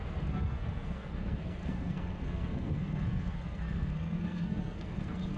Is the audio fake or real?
fake